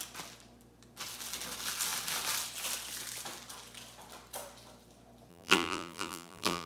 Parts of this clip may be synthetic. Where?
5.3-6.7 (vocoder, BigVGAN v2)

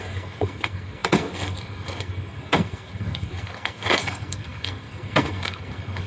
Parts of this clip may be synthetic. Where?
0.0-6.1 (codec, SNAC)

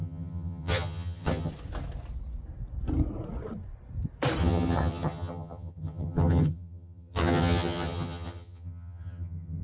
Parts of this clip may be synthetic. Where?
0.0-1.5 (vocoder, HiFi-GAN); 4.4-9.6

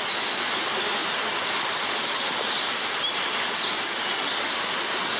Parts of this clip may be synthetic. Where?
none

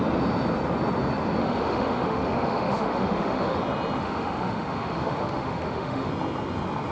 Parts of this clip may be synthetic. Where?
1.4-3.6 (autoencoder, DAC-VAE); 4.0-6.1

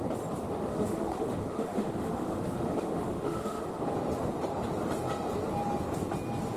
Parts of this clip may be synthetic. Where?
0.7-3.6 (autoencoder, DAC-VAE)

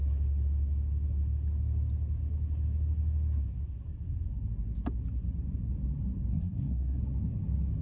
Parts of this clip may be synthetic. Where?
6.3-7.0 (codec, SNAC)

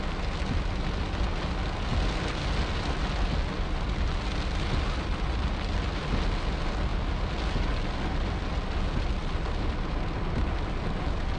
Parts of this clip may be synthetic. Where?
none